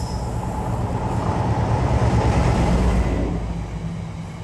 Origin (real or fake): real